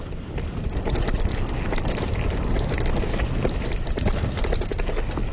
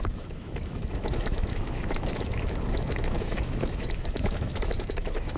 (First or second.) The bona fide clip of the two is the first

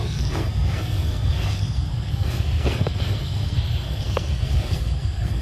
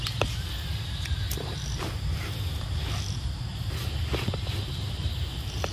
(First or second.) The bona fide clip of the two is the second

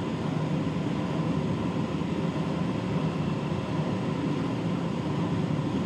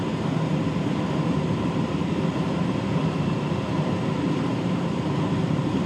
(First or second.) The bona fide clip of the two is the first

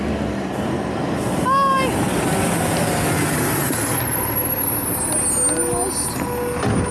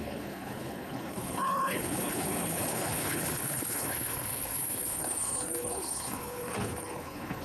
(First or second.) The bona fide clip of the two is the first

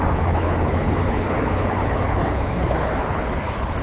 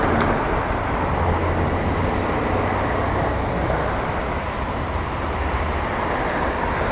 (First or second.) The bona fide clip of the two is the second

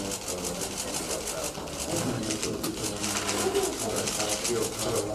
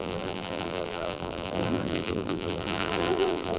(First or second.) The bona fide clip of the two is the first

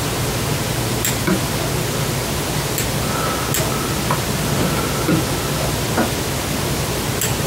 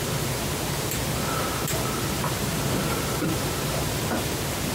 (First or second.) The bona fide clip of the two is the first